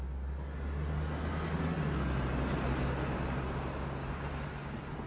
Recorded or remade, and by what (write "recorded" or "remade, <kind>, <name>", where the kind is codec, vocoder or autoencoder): recorded